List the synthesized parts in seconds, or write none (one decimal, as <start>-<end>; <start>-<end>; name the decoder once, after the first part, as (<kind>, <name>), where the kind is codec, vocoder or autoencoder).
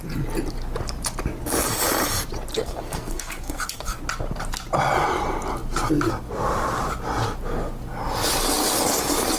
2.5-4.0 (codec, SNAC)